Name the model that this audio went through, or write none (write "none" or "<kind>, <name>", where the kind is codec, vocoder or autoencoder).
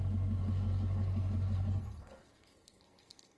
codec, SNAC